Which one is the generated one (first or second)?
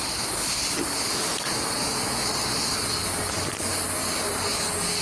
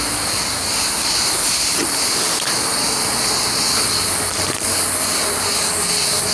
second